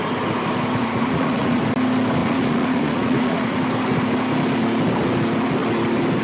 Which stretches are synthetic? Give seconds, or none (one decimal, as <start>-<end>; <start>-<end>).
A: 0.8-1.6; 2.2-3.6